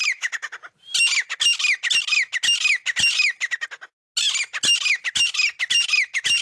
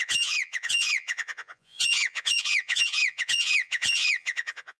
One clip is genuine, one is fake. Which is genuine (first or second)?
first